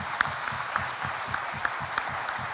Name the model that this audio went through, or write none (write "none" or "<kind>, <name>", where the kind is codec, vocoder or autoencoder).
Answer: none